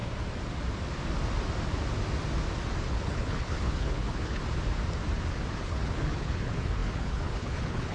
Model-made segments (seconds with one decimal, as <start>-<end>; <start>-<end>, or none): 2.8-4.4; 5.6-7.9